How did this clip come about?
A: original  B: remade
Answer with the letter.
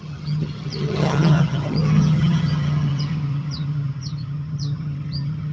B